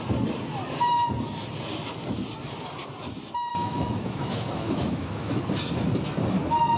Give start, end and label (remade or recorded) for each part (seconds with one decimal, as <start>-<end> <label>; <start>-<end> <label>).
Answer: 0.0-3.5 recorded; 3.5-5.4 remade; 5.4-6.8 recorded